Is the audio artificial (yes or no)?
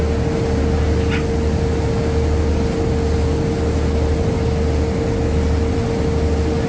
no